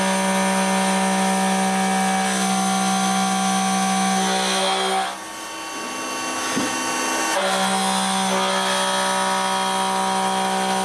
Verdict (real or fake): real